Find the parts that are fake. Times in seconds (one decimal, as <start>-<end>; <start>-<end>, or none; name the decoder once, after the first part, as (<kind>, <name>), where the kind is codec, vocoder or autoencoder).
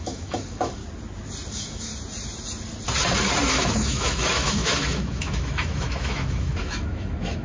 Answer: 0.0-0.8 (autoencoder, DAC-VAE); 1.5-1.9; 3.5-7.4